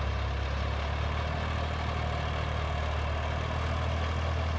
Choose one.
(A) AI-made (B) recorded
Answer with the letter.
B